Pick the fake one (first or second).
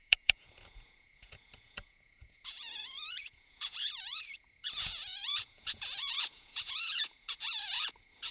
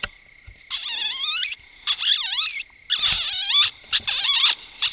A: first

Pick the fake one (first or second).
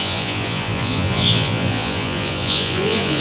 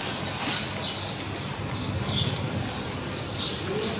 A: first